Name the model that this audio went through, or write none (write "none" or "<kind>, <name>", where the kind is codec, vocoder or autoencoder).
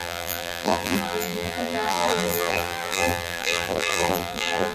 vocoder, BigVGAN v2